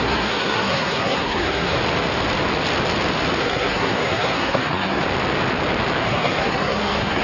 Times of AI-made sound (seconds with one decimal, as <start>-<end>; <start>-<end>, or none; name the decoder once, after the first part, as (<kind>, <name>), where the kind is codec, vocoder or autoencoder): 0.0-1.8 (codec, SNAC); 3.4-5.0; 6.0-7.2